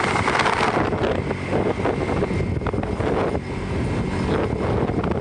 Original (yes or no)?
yes